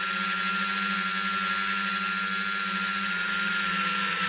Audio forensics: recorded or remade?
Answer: recorded